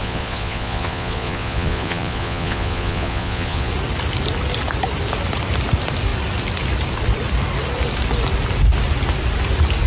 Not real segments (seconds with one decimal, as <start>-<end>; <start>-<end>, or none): 0.0-3.7